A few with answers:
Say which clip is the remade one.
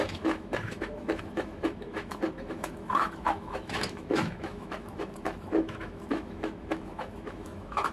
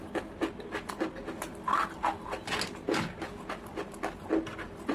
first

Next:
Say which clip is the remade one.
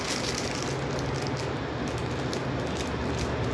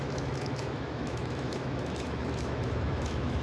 second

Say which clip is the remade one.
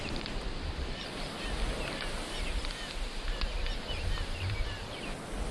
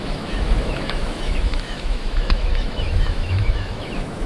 second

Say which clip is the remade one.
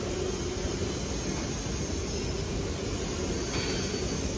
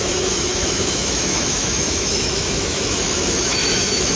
second